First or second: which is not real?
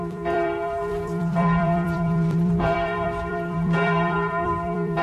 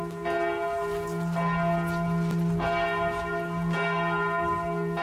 first